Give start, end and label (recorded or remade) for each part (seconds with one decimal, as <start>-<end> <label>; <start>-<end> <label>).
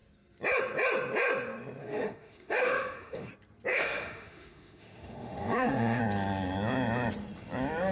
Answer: 0.0-1.8 recorded; 1.8-3.3 remade; 3.3-3.7 recorded; 3.7-6.0 remade; 6.0-7.9 recorded